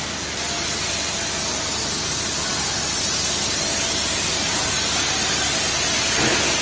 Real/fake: real